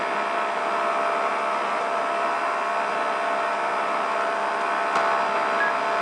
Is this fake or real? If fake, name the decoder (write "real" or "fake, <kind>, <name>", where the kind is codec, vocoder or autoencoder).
real